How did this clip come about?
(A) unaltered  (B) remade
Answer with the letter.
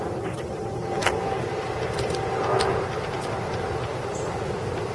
A